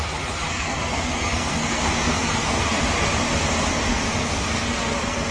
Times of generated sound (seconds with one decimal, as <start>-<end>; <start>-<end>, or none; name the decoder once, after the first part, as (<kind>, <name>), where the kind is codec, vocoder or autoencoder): 0.5-2.8 (codec, SNAC); 3.9-5.3